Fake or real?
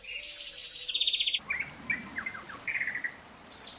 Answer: real